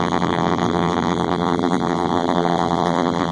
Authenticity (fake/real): fake